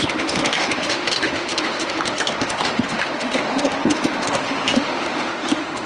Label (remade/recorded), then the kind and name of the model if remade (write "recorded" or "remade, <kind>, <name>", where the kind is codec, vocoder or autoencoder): remade, autoencoder, DAC-VAE